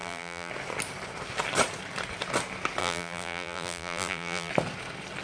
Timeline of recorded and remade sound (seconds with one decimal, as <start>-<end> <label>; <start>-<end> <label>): 0.0-0.5 remade; 0.5-2.8 recorded; 2.8-4.5 remade; 4.5-5.2 recorded